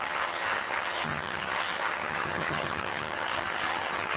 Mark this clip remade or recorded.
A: remade